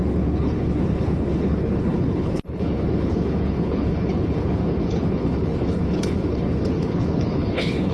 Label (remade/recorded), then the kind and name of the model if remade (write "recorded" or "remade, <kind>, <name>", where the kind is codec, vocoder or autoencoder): remade, codec, HILCodec